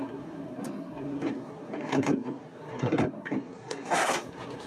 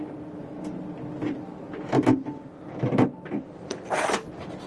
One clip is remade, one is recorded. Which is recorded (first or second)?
second